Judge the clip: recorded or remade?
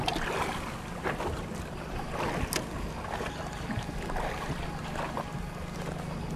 recorded